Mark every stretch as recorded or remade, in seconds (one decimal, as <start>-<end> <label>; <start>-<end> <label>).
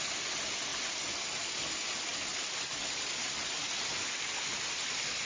0.0-5.2 recorded